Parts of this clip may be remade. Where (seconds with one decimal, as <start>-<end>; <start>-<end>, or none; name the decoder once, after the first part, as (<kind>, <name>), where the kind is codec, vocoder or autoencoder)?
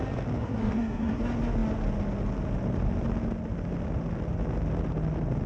0.4-1.2 (codec, SNAC)